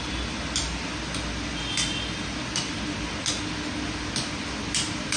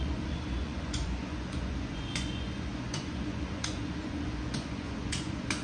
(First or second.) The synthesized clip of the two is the second